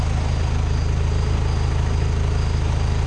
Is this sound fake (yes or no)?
no